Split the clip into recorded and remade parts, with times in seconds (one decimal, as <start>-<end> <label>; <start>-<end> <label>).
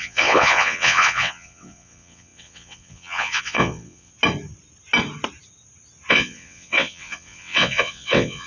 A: 0.0-4.1 remade; 4.1-6.1 recorded; 6.1-8.5 remade